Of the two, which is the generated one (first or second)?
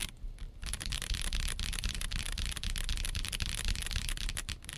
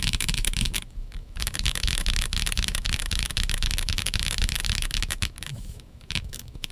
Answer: second